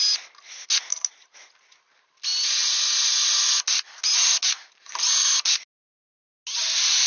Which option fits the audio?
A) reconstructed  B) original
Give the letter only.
B